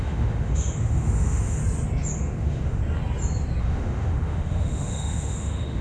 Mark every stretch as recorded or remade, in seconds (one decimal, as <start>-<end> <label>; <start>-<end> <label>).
0.0-1.6 remade; 1.6-2.2 recorded; 2.2-2.8 remade; 2.8-3.6 recorded; 3.6-5.8 remade